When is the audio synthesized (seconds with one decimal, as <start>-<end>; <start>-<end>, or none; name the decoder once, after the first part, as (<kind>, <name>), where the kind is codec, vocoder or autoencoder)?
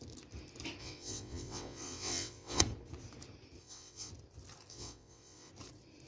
0.8-2.6 (vocoder, WaveNeXt); 3.6-4.1; 4.7-5.5